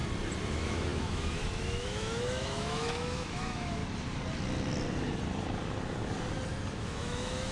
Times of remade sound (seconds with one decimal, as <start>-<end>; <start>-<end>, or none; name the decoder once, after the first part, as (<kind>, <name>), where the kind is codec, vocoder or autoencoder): 0.5-3.8 (autoencoder, DAC-VAE); 6.7-7.5